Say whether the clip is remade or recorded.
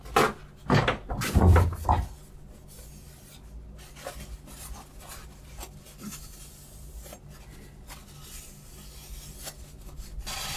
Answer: recorded